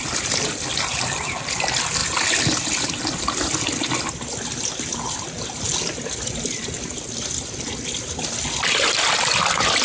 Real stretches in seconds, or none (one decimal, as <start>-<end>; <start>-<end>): 0.0-9.8